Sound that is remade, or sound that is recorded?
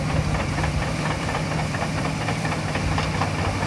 remade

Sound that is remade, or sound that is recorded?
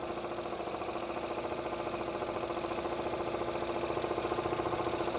remade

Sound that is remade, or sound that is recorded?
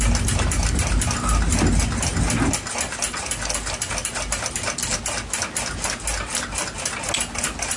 recorded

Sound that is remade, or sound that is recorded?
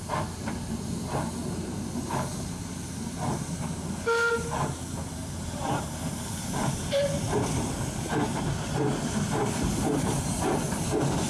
remade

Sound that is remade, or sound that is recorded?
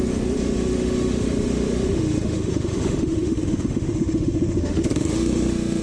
remade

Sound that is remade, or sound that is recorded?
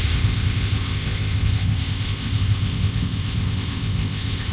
remade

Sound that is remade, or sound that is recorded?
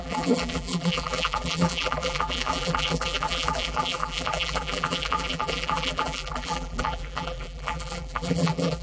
remade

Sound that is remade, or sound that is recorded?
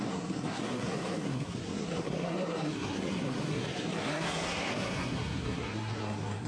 remade